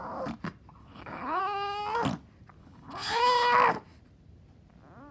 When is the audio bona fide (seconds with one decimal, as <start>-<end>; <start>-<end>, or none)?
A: 0.0-0.8; 1.4-2.6; 3.2-5.1